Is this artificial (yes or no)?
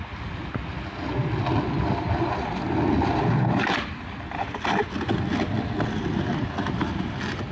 no